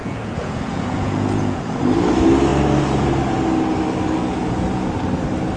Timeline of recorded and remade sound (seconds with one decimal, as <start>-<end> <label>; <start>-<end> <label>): 0.0-1.8 remade; 1.8-4.2 recorded; 4.2-4.9 remade; 4.9-5.6 recorded